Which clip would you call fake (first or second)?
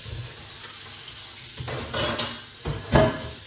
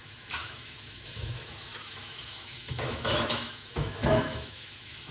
second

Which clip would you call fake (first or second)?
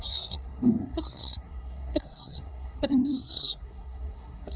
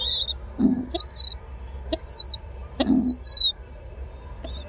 first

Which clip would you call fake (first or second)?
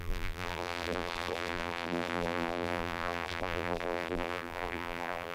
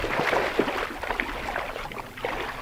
first